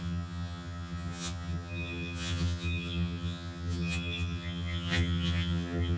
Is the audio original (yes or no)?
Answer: no